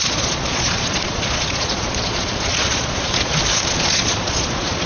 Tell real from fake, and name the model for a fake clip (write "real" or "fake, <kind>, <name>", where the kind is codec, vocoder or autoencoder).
fake, vocoder, Vocos